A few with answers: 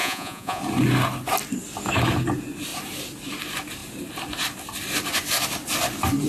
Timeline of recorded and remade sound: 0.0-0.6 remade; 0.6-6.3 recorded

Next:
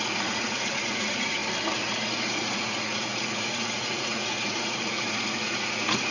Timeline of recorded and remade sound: 0.0-1.4 remade; 1.4-2.3 recorded; 2.3-6.1 remade

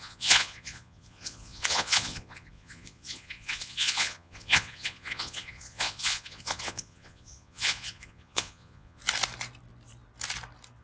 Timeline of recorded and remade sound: 0.0-9.0 remade; 9.0-10.8 recorded

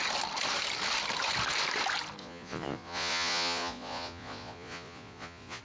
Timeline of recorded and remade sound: 0.0-2.2 recorded; 2.2-5.6 remade

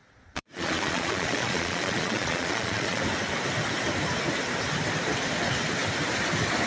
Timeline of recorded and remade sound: 0.0-3.0 remade; 3.0-6.7 recorded